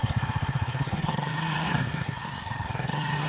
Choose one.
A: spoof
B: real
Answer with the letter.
A